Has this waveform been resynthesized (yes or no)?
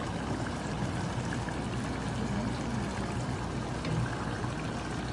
no